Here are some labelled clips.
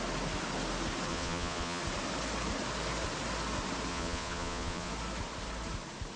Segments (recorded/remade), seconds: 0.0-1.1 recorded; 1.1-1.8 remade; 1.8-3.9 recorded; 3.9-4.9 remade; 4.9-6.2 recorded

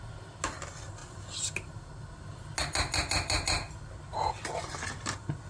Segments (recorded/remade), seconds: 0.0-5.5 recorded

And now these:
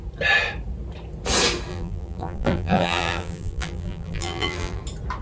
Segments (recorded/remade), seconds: 0.0-1.7 recorded; 1.7-4.8 remade; 4.8-5.2 recorded

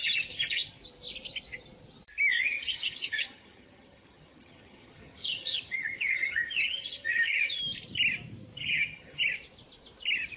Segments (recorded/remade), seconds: 0.0-0.8 remade; 0.8-2.4 recorded; 2.4-7.6 remade; 7.6-8.6 recorded; 8.6-9.2 remade; 9.2-10.4 recorded